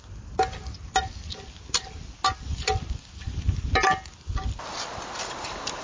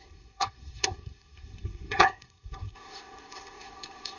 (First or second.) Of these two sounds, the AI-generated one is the second